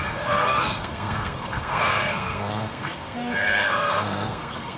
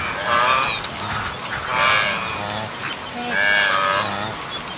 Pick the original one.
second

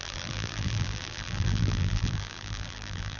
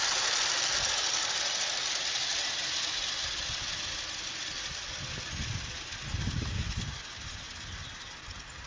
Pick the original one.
second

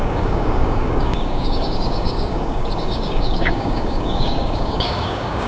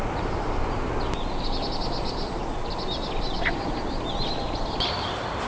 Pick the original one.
second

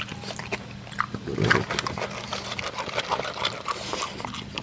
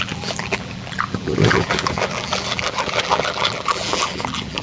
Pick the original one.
first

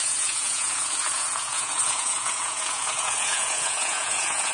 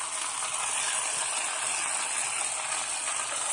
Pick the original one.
second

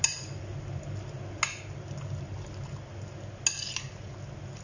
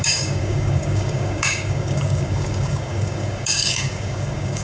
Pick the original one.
first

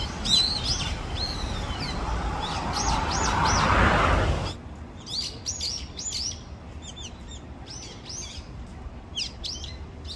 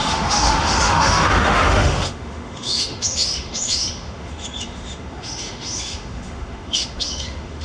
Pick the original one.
first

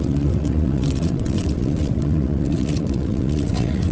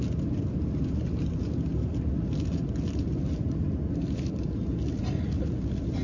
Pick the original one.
second